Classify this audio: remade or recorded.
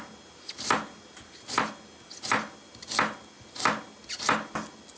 recorded